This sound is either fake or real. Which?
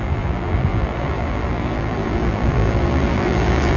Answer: fake